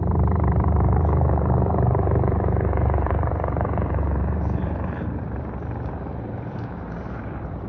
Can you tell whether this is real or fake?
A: fake